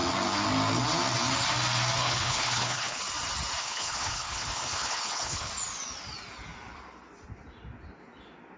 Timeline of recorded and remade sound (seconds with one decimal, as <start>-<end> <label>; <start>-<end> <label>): 0.0-2.0 recorded; 2.0-3.0 remade; 3.0-3.6 recorded; 3.6-5.5 remade; 5.5-8.6 recorded